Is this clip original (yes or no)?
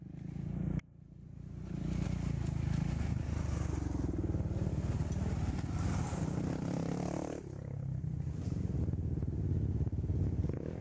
yes